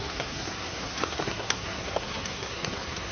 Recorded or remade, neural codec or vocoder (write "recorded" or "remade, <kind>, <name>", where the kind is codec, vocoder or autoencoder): remade, codec, SNAC